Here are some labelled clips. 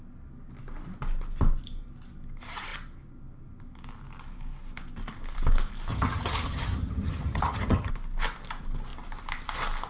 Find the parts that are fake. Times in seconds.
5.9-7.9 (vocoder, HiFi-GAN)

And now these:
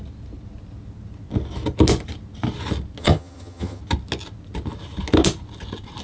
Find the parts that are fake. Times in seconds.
3.0-3.8 (vocoder, HiFi-GAN)

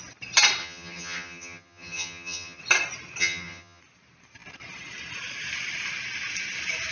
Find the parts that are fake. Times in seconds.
0.6-2.6 (vocoder, HiFi-GAN); 3.2-3.8